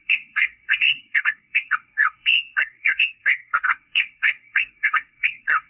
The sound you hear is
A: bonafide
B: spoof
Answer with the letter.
B